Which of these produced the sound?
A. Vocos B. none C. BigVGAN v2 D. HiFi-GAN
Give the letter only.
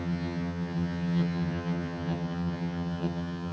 D